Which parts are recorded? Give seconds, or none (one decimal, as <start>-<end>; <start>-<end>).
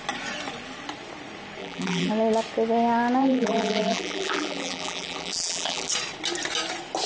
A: 0.0-1.6; 2.1-3.2; 5.9-7.1